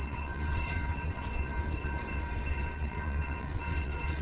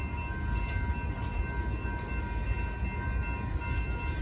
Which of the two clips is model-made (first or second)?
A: first